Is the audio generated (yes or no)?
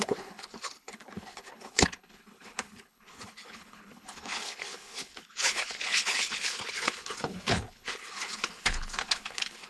yes